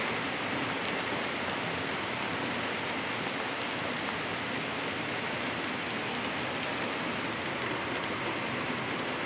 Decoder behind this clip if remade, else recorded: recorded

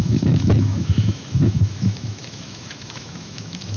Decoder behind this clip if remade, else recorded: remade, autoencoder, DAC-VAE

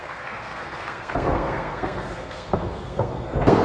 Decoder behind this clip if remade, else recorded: remade, codec, SNAC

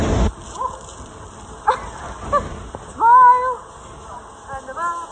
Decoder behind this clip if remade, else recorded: recorded